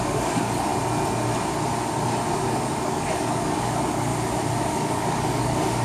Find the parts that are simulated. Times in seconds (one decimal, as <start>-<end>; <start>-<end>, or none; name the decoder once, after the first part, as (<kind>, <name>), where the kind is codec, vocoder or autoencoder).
0.0-0.7 (codec, DAC); 2.3-4.1; 4.7-5.8